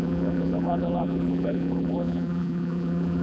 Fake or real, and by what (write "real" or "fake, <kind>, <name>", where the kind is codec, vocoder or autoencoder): fake, vocoder, BigVGAN v2